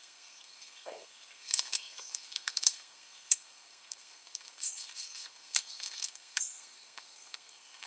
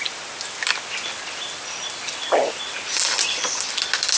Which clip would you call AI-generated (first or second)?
first